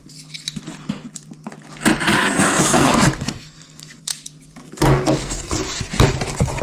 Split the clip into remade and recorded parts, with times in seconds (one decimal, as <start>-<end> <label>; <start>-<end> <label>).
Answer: 0.0-2.1 recorded; 2.1-4.0 remade; 4.0-4.6 recorded; 4.6-5.6 remade; 5.6-6.6 recorded

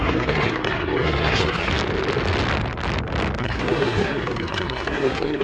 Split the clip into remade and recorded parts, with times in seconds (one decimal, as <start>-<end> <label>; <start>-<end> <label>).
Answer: 0.0-1.7 remade; 1.7-3.4 recorded; 3.4-5.4 remade

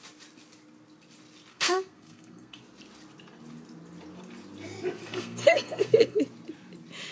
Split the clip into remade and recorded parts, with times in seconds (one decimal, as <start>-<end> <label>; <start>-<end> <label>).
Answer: 0.0-1.5 recorded; 1.5-2.6 remade; 2.6-5.0 recorded; 5.0-6.2 remade; 6.2-7.1 recorded

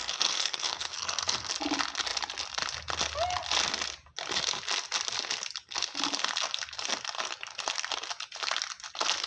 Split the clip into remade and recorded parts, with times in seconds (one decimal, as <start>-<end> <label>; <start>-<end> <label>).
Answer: 0.0-1.5 remade; 1.5-9.3 recorded

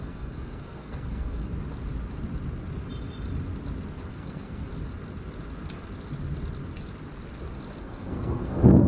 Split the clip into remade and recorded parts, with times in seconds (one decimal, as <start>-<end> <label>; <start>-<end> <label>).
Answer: 0.0-1.5 remade; 1.5-4.1 recorded; 4.1-4.7 remade; 4.7-7.8 recorded; 7.8-8.9 remade